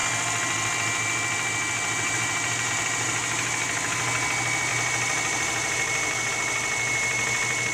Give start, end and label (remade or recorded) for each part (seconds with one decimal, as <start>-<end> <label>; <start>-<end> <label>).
0.0-7.7 recorded